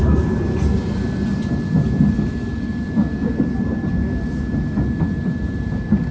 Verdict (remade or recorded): recorded